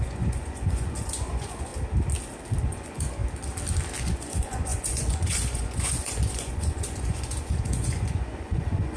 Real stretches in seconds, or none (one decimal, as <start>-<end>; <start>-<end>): 1.7-2.6; 3.2-4.0